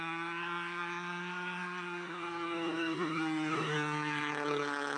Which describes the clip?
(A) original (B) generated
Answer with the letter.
B